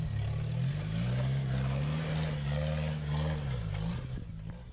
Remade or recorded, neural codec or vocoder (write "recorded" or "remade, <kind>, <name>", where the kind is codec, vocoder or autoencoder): recorded